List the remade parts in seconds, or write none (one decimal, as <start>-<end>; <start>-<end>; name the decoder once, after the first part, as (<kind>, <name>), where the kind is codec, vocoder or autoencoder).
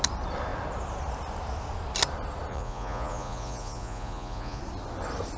2.5-4.6 (vocoder, Vocos)